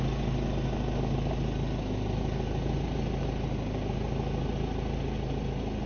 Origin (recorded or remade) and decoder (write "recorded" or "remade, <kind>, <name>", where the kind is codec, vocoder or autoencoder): recorded